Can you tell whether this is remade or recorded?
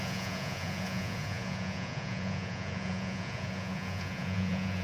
remade